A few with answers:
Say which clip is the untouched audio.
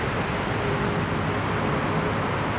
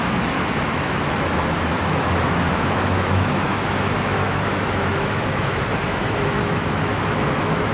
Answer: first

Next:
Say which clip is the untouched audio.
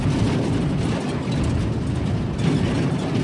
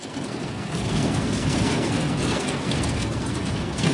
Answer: first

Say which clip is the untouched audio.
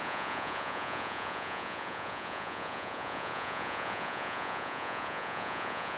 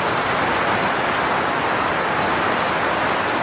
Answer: second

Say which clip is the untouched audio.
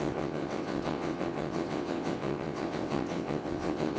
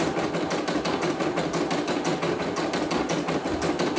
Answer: second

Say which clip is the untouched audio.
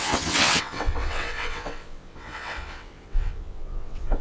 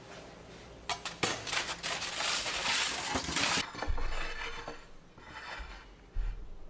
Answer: second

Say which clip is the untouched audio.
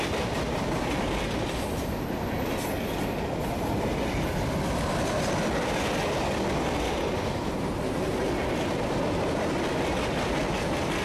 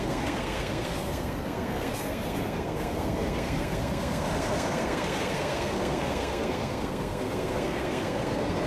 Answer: first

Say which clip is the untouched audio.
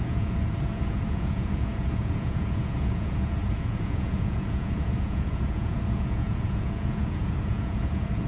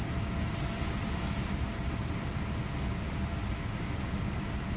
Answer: second